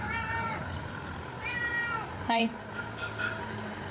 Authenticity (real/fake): fake